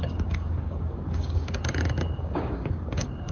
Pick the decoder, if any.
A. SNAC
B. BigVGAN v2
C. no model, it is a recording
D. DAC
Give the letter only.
D